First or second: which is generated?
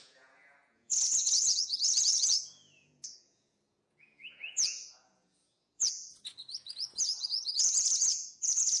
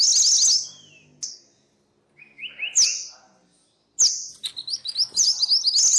first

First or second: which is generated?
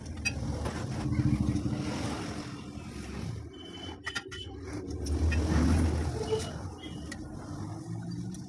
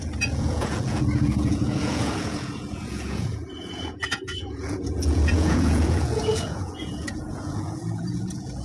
second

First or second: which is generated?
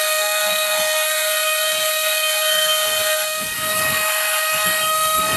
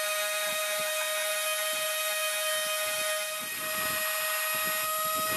first